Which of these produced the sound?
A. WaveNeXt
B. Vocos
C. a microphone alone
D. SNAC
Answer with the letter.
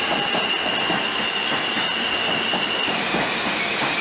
C